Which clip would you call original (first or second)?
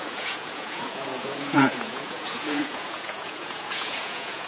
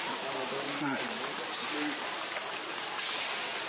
second